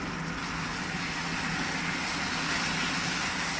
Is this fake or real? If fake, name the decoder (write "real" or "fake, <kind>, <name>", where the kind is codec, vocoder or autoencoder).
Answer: real